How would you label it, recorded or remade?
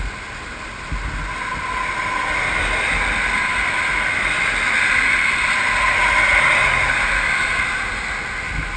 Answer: recorded